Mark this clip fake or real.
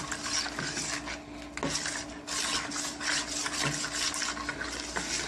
real